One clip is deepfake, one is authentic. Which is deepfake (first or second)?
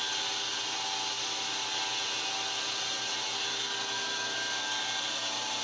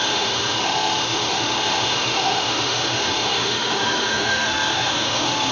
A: second